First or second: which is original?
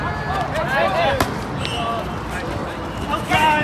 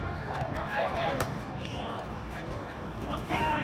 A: first